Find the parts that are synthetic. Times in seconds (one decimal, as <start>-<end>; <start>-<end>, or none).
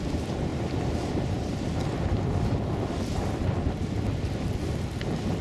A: none